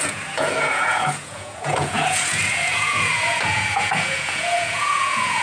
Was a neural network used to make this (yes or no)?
yes